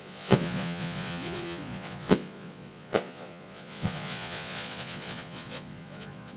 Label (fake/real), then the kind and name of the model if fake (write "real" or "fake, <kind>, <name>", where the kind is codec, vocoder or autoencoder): fake, vocoder, Vocos